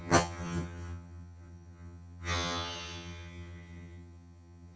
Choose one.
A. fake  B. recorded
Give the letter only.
A